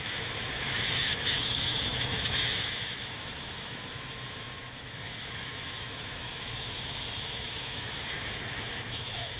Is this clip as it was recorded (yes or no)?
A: no